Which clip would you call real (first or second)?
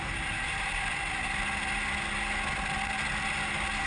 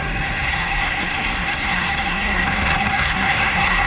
first